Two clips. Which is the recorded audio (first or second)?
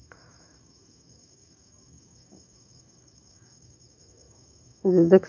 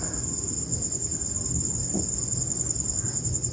second